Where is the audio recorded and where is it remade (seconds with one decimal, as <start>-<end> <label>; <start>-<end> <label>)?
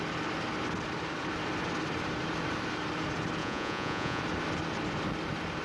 0.0-3.4 recorded; 3.4-4.2 remade; 4.2-5.6 recorded